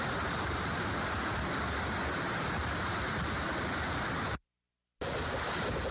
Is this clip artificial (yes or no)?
no